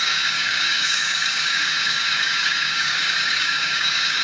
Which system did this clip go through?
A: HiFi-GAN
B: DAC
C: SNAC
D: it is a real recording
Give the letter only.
B